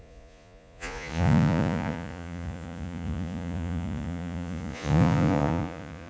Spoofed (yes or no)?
yes